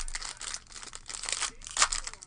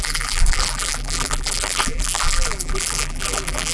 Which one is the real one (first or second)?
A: first